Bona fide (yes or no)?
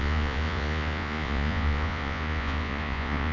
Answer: no